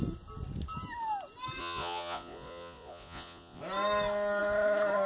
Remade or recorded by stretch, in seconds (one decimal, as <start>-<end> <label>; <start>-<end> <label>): 0.0-1.6 recorded; 1.6-3.6 remade; 3.6-5.1 recorded